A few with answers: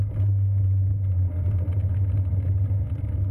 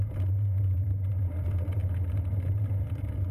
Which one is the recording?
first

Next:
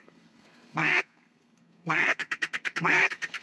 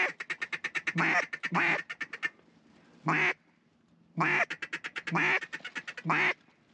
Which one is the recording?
second